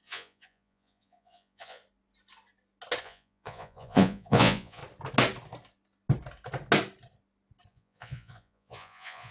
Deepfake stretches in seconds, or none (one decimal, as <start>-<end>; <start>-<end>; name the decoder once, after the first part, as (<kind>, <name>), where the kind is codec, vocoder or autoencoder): 0.0-1.8 (vocoder, Vocos); 3.0-4.8; 7.7-9.3